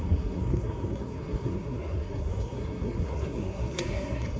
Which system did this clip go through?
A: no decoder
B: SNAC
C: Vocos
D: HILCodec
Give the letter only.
B